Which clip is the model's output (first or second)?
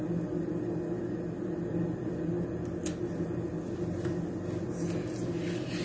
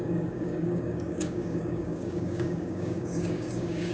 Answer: second